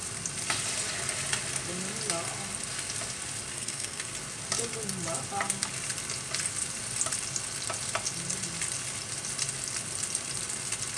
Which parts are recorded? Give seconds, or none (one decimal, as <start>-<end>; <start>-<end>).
0.0-3.5; 4.1-11.0